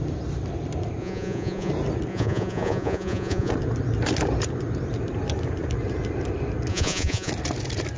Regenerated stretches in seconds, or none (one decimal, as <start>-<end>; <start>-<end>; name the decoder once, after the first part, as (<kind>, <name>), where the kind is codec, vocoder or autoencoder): 1.0-1.7 (vocoder, Vocos); 2.1-3.5; 6.7-7.3